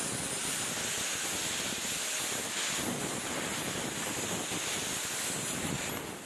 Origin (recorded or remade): recorded